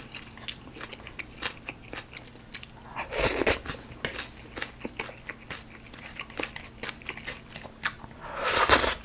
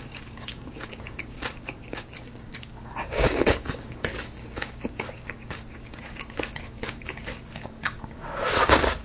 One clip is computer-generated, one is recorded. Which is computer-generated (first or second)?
second